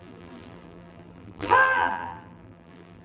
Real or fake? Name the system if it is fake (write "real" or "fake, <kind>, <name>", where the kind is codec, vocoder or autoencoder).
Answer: fake, vocoder, BigVGAN v2